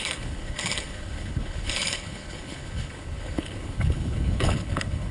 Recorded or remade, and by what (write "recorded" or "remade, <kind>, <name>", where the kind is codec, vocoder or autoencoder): remade, codec, HILCodec